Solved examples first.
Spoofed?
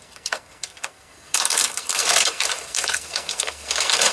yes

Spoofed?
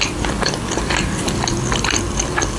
no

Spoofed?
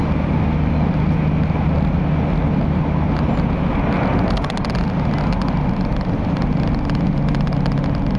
no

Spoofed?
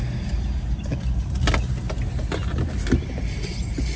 no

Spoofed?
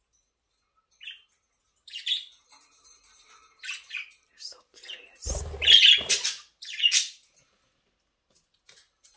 no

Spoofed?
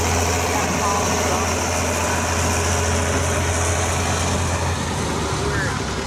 no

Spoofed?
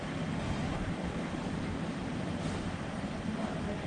no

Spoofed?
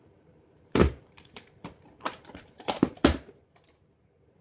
yes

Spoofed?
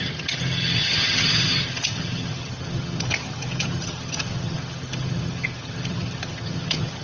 yes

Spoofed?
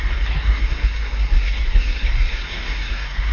yes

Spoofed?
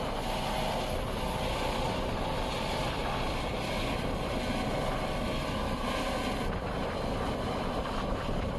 no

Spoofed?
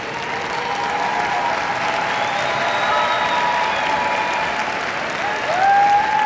no